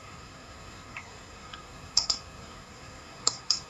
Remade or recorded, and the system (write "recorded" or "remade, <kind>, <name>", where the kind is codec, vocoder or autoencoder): remade, codec, SNAC